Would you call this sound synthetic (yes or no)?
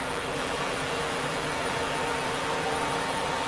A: yes